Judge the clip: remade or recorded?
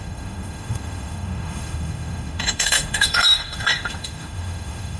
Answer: remade